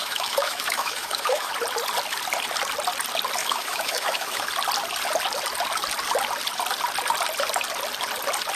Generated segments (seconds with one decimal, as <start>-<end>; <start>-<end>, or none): 0.0-1.5; 3.4-4.5